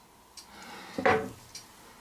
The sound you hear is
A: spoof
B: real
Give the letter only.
B